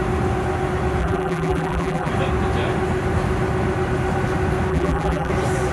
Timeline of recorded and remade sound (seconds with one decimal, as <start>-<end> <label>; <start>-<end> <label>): 0.0-1.0 recorded; 1.0-2.1 remade; 2.1-4.7 recorded; 4.7-5.3 remade; 5.3-5.7 recorded